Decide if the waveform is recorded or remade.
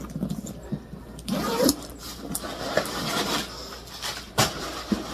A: recorded